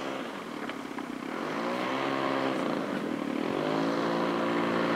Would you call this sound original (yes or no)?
yes